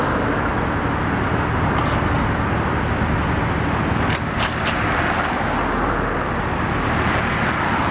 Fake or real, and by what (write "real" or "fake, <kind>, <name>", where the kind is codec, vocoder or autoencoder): real